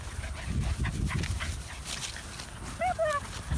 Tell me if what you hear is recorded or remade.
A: recorded